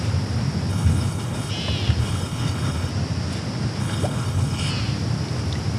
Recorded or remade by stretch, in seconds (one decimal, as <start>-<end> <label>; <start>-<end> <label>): 0.0-0.7 recorded; 0.7-1.5 remade; 1.5-2.0 recorded; 2.0-2.9 remade; 2.9-3.8 recorded; 3.8-4.7 remade; 4.7-5.8 recorded